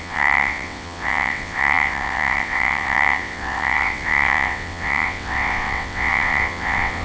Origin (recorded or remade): remade